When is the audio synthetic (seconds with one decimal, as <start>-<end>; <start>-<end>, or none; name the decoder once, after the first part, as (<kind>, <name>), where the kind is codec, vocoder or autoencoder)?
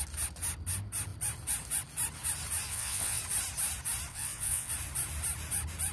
2.7-3.2 (vocoder, WaveNeXt); 4.1-4.7